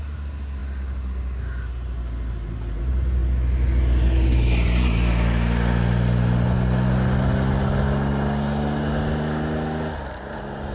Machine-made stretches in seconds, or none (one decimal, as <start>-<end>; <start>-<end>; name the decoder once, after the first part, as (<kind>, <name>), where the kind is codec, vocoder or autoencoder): none